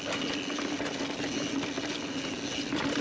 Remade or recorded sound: recorded